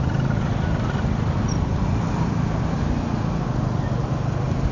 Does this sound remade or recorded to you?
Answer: recorded